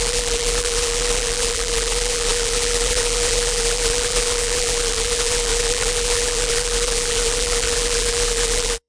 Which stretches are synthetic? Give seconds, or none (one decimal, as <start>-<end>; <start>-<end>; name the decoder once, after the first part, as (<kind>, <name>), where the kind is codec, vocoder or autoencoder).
0.0-8.9 (vocoder, BigVGAN v2)